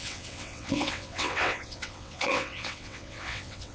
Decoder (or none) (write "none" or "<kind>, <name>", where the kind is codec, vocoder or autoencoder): vocoder, WaveNeXt